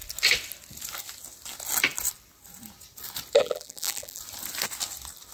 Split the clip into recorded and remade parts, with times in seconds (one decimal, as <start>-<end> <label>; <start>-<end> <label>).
0.0-3.4 recorded; 3.4-4.2 remade; 4.2-5.3 recorded